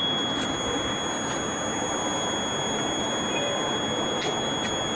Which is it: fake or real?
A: real